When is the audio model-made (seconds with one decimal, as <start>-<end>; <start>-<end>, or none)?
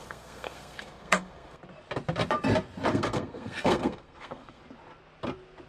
0.0-1.6; 2.9-4.6